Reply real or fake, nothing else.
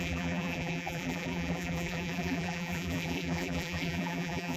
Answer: fake